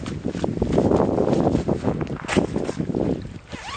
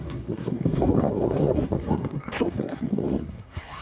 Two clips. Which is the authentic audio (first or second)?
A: first